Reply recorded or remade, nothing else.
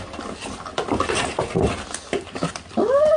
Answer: recorded